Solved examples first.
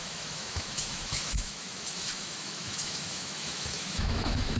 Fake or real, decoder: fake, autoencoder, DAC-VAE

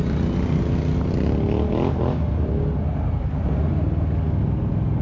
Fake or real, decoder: real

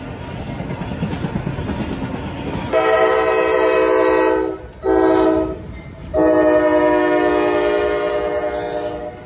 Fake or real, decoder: real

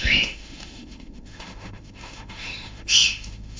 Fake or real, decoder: fake, autoencoder, DAC-VAE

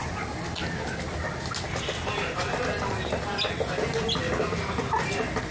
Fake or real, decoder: real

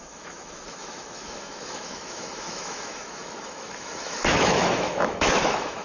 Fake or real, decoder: fake, autoencoder, DAC-VAE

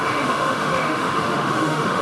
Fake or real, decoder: fake, autoencoder, DAC-VAE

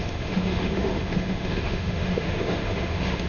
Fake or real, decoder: fake, autoencoder, DAC-VAE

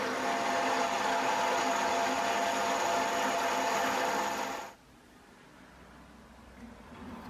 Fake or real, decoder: real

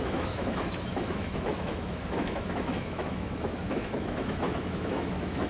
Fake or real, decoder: fake, autoencoder, DAC-VAE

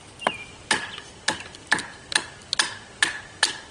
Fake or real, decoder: real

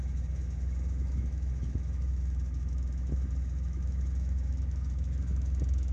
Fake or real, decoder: fake, autoencoder, DAC-VAE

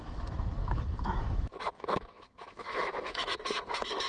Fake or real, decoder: fake, autoencoder, DAC-VAE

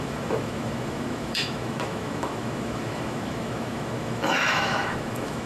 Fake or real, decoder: fake, autoencoder, DAC-VAE